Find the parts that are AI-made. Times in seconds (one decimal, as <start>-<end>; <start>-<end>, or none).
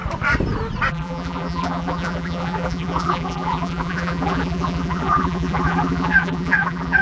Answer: 0.9-7.0